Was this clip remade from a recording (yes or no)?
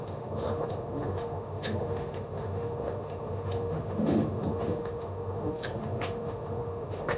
yes